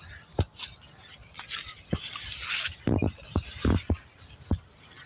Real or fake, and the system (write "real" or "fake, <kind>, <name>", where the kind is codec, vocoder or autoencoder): real